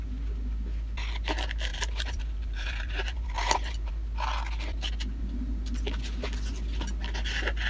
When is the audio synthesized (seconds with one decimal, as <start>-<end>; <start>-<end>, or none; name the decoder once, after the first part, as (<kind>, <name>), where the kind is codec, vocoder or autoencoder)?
1.7-3.9 (vocoder, BigVGAN v2)